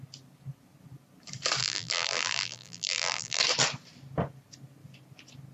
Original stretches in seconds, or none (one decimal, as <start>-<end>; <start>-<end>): 0.0-1.6; 3.4-5.5